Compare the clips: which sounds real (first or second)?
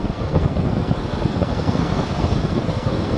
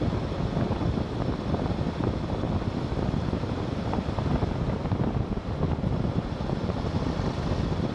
second